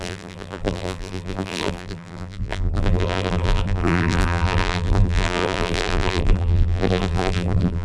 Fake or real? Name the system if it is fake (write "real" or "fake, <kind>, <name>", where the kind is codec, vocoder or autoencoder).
fake, vocoder, BigVGAN v2